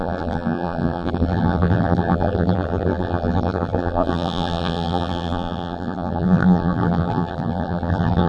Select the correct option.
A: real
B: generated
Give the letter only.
B